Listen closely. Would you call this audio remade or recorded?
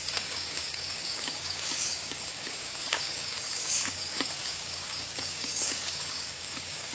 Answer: remade